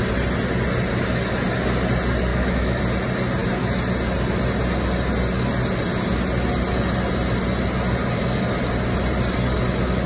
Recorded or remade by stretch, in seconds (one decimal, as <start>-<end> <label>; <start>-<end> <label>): 0.0-2.3 recorded; 2.3-2.8 remade; 2.8-10.1 recorded